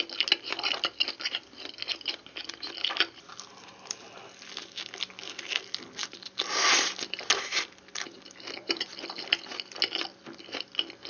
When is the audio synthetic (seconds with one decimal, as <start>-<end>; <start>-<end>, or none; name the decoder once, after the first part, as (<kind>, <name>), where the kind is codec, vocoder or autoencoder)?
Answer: none